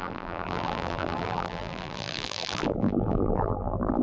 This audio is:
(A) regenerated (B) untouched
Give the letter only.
A